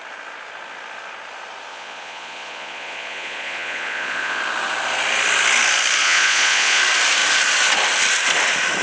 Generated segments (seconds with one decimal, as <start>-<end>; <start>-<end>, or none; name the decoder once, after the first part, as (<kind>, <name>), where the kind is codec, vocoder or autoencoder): 1.7-4.4 (vocoder, Vocos); 6.0-6.8